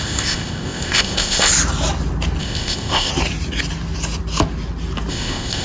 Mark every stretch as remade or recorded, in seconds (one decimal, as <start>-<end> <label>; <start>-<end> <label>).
0.0-1.5 remade; 1.5-2.4 recorded; 2.4-3.1 remade; 3.1-5.1 recorded; 5.1-5.6 remade